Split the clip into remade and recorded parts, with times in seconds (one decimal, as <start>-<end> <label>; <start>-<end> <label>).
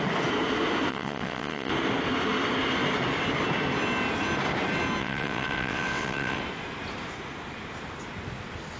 0.0-0.9 recorded; 0.9-1.7 remade; 1.7-5.0 recorded; 5.0-6.4 remade; 6.4-8.8 recorded